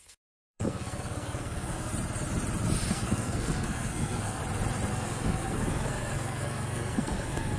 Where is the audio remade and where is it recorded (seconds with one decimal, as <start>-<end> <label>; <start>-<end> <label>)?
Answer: 0.0-1.9 remade; 1.9-2.9 recorded; 2.9-4.4 remade; 4.4-4.9 recorded; 4.9-7.6 remade